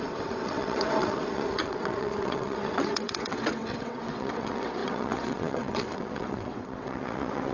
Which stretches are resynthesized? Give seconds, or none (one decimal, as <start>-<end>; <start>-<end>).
0.0-7.5